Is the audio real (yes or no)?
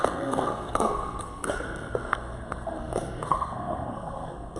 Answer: no